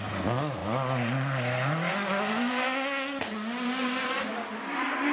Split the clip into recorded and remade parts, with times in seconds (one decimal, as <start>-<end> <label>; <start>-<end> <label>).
0.0-5.1 recorded